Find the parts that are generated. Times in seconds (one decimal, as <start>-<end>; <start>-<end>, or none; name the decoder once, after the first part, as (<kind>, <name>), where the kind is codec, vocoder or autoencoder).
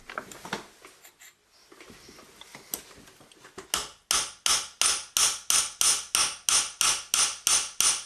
none